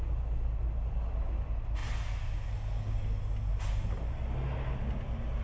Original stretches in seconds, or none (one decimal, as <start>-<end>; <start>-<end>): 0.0-5.4